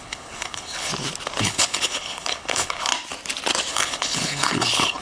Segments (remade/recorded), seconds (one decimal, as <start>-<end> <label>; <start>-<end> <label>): 0.0-0.9 remade; 0.9-1.4 recorded; 1.4-2.9 remade; 2.9-3.7 recorded; 3.7-5.0 remade